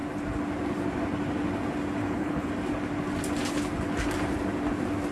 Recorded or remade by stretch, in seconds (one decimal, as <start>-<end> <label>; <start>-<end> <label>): 0.0-2.0 recorded; 2.0-2.5 remade; 2.5-5.1 recorded

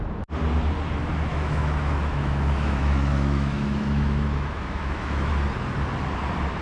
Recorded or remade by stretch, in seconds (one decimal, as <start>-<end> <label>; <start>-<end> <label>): 0.0-1.3 recorded; 1.3-5.3 remade; 5.3-6.6 recorded

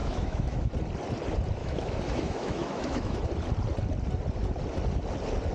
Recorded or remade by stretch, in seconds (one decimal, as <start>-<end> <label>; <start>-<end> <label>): 0.0-0.7 remade; 0.7-1.6 recorded; 1.6-3.2 remade; 3.2-5.5 recorded

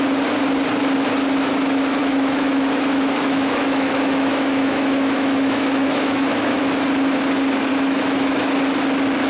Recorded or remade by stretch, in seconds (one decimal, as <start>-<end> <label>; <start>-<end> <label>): 0.0-2.0 recorded; 2.0-6.6 remade; 6.6-7.7 recorded; 7.7-8.6 remade; 8.6-9.3 recorded